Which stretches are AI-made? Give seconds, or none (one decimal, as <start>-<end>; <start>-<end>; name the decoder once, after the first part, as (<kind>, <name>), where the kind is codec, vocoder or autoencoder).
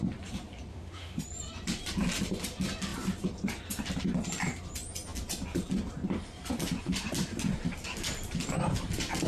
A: 0.7-1.2 (autoencoder, DAC-VAE)